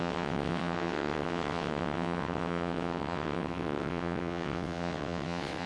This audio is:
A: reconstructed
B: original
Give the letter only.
A